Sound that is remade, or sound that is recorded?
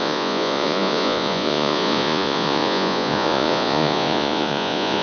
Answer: remade